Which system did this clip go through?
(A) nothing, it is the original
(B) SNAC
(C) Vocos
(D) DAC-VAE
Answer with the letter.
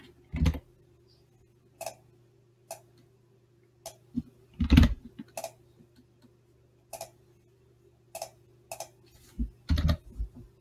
A